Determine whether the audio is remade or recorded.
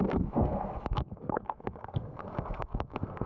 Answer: remade